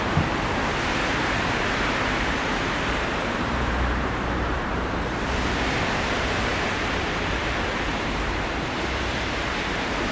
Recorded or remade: remade